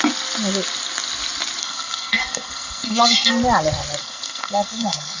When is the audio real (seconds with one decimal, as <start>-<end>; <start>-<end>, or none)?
0.0-1.6; 3.3-4.0